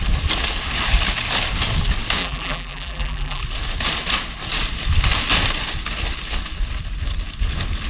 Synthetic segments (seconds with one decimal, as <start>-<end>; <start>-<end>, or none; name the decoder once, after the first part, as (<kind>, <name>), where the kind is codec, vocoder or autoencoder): 2.2-3.4 (vocoder, BigVGAN v2)